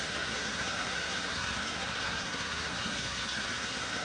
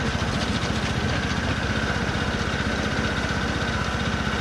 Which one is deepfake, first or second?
first